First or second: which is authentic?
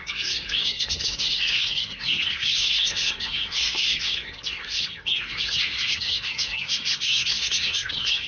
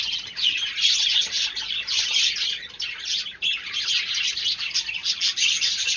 second